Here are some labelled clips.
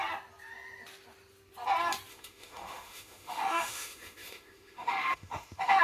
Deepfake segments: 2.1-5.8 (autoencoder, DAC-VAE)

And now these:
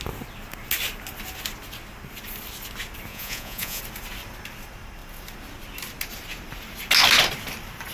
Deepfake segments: 3.1-3.8 (vocoder, Vocos)

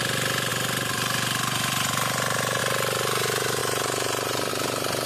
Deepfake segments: 0.5-2.6 (vocoder, BigVGAN v2); 3.6-4.5

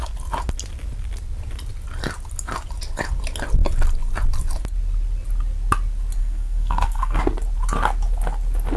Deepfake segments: 6.2-7.2 (codec, SNAC)

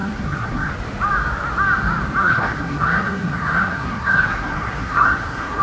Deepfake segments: 0.0-0.7 (codec, SNAC); 2.2-5.6

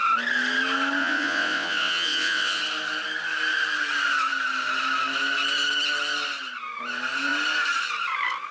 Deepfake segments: 1.0-2.6 (vocoder, WaveNeXt)

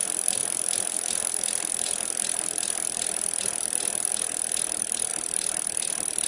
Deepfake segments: none

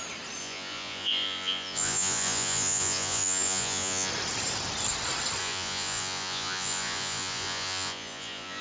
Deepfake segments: 0.4-4.1 (vocoder, Vocos); 5.4-8.6